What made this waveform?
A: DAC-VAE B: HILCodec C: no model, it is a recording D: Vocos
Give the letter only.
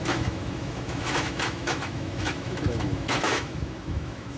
A